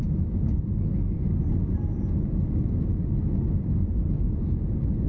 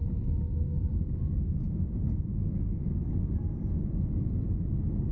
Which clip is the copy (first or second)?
second